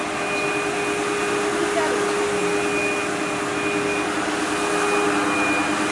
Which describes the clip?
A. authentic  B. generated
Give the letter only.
A